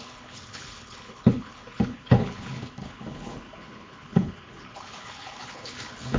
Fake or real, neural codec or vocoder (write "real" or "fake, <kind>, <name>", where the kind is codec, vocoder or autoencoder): fake, codec, HILCodec